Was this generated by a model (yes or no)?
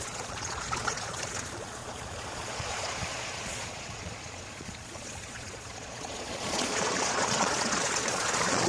yes